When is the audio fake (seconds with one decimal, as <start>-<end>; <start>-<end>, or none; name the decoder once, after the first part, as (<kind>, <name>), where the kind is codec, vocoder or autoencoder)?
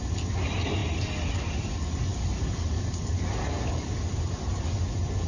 none